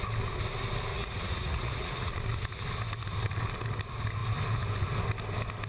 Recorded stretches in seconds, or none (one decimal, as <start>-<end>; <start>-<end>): 0.0-0.9; 2.1-5.7